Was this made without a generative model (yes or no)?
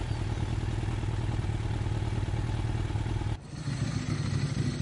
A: yes